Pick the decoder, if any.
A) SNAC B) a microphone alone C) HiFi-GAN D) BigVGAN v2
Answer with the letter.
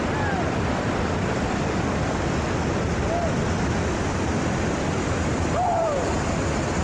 B